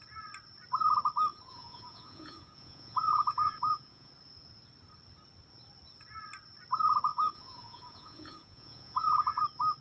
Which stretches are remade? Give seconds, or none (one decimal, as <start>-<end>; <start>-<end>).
1.3-4.1; 7.1-9.4